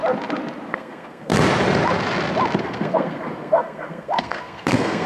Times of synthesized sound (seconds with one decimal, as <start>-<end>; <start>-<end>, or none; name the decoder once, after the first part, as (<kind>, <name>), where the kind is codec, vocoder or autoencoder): 0.7-1.3 (codec, SNAC); 2.6-5.1